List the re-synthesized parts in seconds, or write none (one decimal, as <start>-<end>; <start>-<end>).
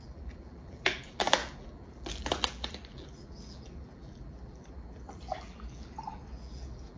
0.0-7.0